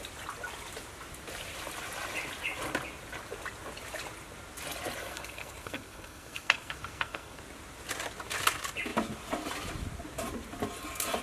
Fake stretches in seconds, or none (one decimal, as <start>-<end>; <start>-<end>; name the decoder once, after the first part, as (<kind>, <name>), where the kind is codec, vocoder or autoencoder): 5.0-7.4 (codec, SNAC)